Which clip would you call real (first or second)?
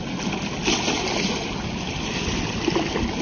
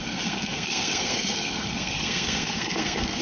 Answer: first